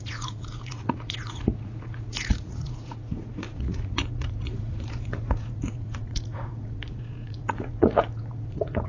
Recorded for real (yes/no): no